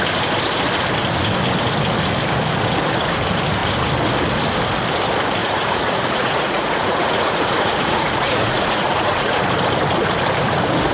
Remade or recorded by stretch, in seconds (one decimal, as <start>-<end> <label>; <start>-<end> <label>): 0.0-5.4 recorded; 5.4-9.4 remade; 9.4-10.9 recorded